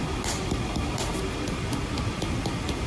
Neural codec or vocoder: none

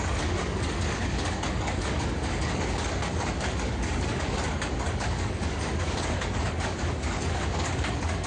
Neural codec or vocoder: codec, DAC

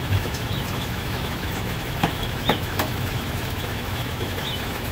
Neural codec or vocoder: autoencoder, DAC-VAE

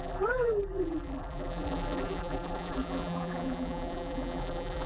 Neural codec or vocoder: vocoder, BigVGAN v2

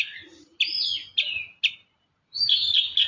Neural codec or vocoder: none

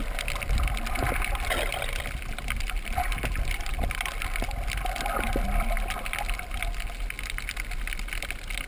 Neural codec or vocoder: none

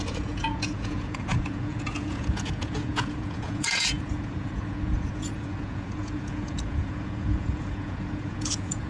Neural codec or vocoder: vocoder, Vocos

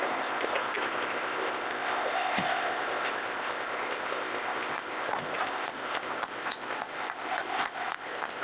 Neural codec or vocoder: codec, ZipCodec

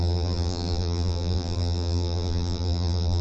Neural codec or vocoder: vocoder, BigVGAN v2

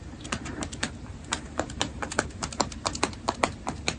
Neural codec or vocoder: vocoder, BigVGAN v2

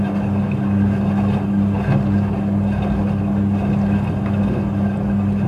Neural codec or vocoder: none